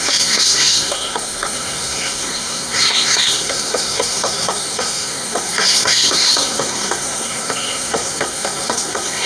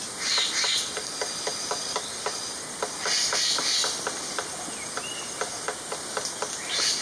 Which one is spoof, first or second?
first